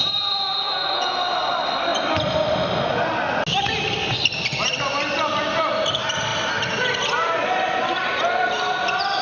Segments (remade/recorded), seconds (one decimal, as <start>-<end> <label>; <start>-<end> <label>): 0.0-1.2 remade; 1.2-9.2 recorded